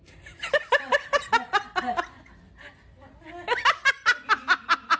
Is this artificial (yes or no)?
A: no